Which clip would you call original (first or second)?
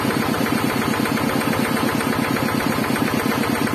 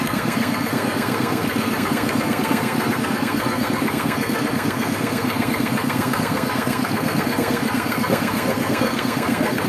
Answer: first